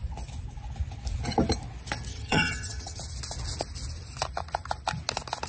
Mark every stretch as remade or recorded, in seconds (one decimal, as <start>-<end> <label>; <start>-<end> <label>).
0.0-2.1 recorded; 2.1-3.0 remade; 3.0-5.5 recorded